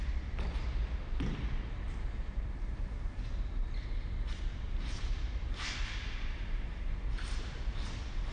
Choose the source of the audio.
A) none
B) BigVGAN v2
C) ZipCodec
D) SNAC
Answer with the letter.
B